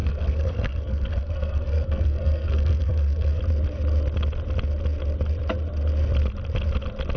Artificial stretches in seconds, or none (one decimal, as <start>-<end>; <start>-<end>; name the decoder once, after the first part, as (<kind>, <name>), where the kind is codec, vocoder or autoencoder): 0.0-3.4 (codec, SNAC)